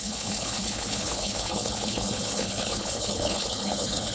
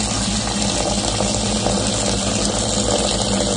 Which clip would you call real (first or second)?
second